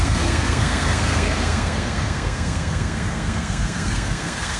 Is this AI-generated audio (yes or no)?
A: yes